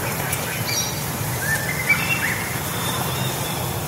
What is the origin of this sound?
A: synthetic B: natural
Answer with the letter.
B